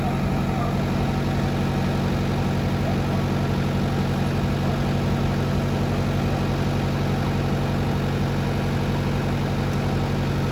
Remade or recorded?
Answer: recorded